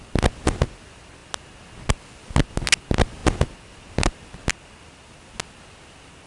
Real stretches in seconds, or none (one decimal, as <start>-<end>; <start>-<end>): 0.0-3.2; 3.7-6.3